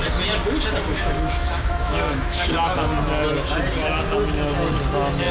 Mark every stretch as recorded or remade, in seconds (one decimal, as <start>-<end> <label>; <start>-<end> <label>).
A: 0.0-0.9 recorded; 0.9-2.5 remade; 2.5-5.3 recorded